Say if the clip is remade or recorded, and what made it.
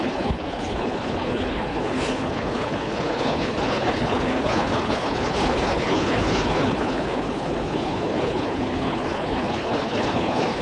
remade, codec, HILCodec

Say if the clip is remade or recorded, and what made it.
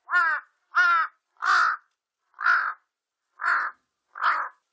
recorded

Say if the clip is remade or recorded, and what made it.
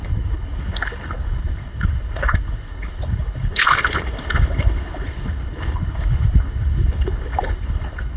remade, codec, HILCodec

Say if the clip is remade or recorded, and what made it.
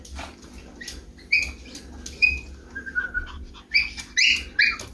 recorded